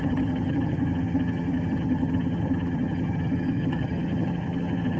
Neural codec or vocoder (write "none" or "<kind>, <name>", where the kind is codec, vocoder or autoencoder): vocoder, HiFi-GAN